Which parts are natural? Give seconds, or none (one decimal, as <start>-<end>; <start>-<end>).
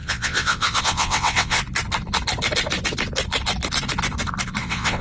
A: 1.6-4.6